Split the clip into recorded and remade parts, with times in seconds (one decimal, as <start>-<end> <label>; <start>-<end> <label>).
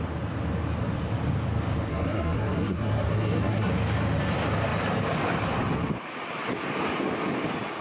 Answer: 0.0-1.9 recorded; 1.9-3.7 remade; 3.7-7.8 recorded